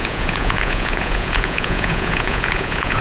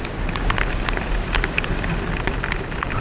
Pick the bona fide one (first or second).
second